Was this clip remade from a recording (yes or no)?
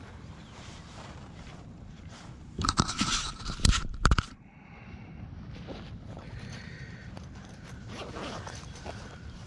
yes